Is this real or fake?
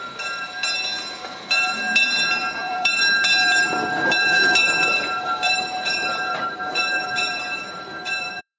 fake